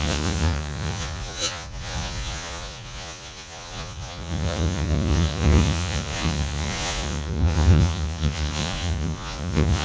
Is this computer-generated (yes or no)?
yes